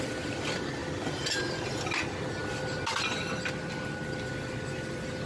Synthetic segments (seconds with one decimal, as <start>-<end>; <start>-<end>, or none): none